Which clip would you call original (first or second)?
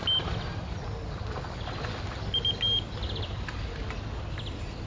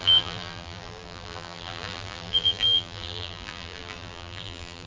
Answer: first